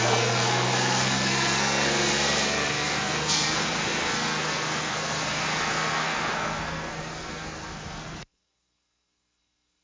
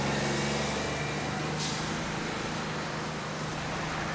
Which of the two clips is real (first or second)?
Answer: second